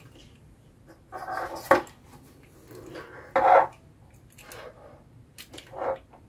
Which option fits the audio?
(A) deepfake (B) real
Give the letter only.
B